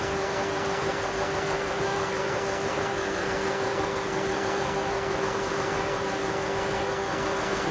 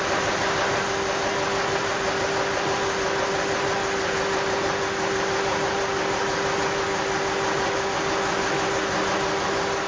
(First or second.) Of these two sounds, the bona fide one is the second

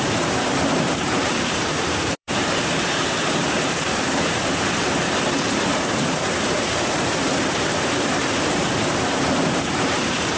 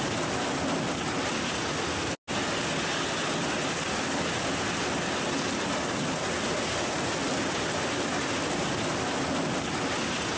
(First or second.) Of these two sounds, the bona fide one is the second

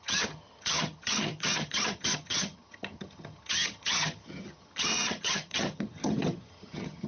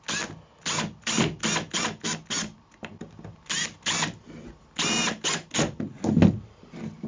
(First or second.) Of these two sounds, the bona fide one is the second